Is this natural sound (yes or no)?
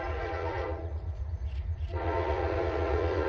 no